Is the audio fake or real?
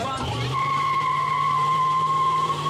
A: fake